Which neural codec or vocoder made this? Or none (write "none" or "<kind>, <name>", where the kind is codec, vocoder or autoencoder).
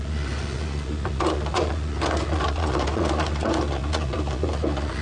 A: vocoder, Vocos